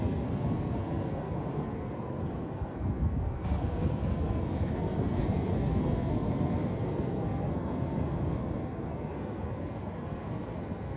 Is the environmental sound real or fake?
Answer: fake